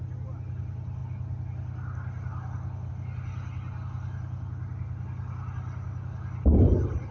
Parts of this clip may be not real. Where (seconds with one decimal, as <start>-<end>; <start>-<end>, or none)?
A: none